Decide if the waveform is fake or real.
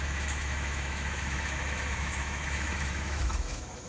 fake